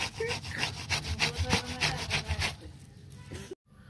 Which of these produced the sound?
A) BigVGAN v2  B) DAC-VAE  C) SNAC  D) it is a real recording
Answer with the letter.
D